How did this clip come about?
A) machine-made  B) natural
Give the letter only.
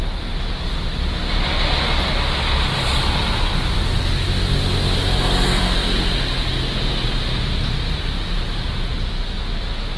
B